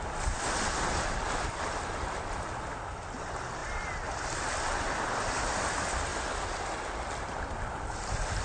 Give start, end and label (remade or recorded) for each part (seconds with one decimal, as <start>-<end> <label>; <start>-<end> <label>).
0.0-3.6 recorded; 3.6-5.0 remade; 5.0-6.1 recorded; 6.1-8.0 remade; 8.0-8.4 recorded